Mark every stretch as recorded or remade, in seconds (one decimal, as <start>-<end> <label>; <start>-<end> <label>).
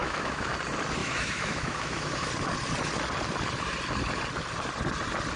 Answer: 0.0-0.5 remade; 0.5-1.0 recorded; 1.0-2.3 remade; 2.3-5.4 recorded